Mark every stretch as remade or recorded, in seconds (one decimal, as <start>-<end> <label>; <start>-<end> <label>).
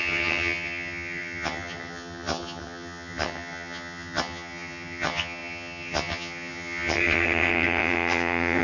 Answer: 0.0-8.6 remade